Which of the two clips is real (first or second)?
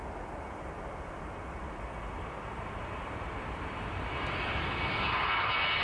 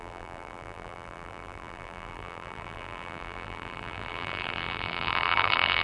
first